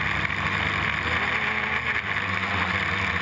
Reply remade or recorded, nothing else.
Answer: recorded